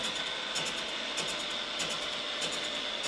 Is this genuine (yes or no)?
yes